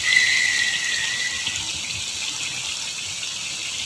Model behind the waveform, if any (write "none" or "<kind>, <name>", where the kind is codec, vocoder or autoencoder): none